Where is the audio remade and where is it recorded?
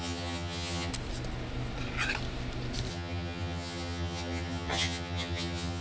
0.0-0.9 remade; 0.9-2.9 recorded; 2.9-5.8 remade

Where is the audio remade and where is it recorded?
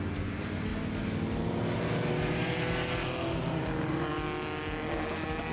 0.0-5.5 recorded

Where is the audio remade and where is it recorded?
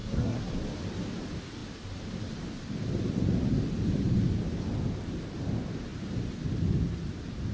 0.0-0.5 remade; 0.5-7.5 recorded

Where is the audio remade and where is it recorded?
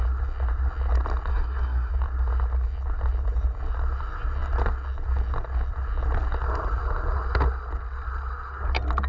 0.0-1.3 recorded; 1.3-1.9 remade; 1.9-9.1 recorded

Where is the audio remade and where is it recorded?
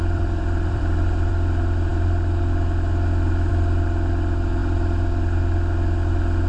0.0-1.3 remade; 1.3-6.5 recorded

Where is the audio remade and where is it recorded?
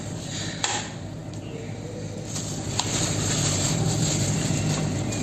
0.0-1.2 remade; 1.2-1.9 recorded; 1.9-5.2 remade